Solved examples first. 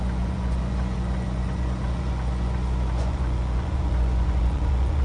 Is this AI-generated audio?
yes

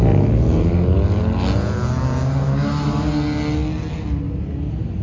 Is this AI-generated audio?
no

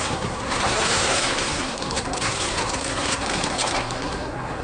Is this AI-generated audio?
yes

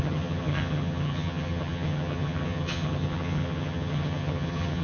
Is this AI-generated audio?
yes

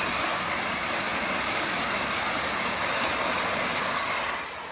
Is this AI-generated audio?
no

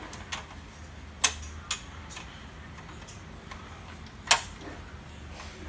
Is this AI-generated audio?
no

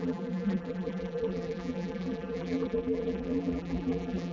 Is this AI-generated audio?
yes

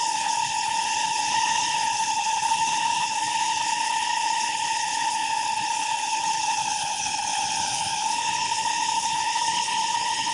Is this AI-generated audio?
yes